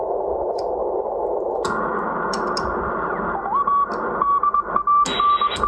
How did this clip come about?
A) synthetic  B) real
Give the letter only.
B